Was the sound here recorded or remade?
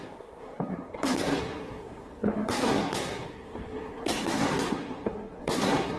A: remade